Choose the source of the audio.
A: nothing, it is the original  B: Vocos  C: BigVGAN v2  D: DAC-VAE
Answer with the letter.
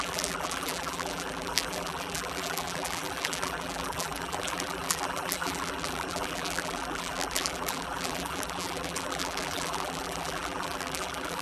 C